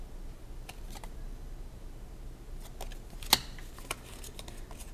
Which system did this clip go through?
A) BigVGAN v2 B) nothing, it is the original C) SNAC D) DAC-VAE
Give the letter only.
B